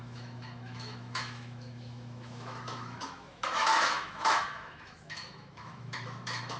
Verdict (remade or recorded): remade